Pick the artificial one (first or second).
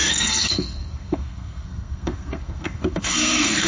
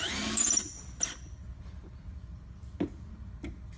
first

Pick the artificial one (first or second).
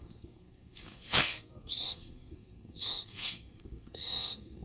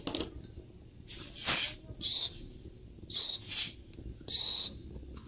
first